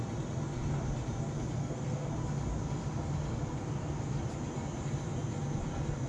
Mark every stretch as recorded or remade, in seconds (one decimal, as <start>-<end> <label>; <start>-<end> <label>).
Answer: 0.0-1.6 recorded; 1.6-2.1 remade; 2.1-6.1 recorded